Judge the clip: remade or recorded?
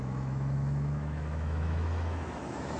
remade